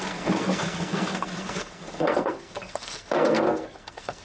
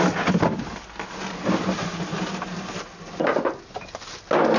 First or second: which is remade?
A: first